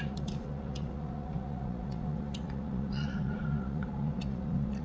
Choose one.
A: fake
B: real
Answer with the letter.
A